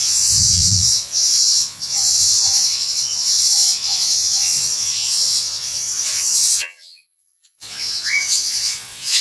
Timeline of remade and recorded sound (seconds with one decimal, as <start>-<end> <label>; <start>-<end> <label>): 0.0-9.2 remade